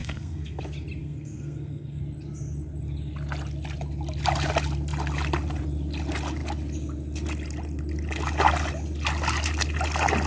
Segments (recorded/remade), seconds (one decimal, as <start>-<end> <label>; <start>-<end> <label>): 0.0-0.6 remade; 0.6-1.0 recorded; 1.0-2.0 remade; 2.0-10.3 recorded